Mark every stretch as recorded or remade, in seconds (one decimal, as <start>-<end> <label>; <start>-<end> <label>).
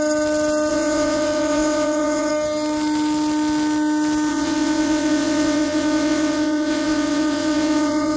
0.0-0.7 recorded; 0.7-2.3 remade; 2.3-4.3 recorded; 4.3-8.2 remade